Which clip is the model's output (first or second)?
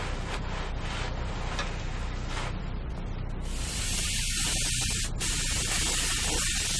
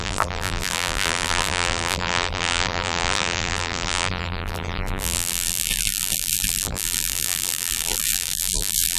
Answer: second